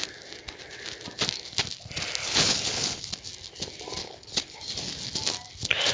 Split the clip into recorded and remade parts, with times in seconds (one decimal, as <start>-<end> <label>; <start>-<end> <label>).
0.0-2.2 recorded; 2.2-3.0 remade; 3.0-4.0 recorded; 4.0-4.6 remade; 4.6-5.9 recorded